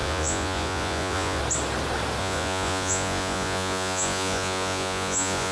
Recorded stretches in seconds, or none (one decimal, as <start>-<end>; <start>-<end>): 1.4-2.2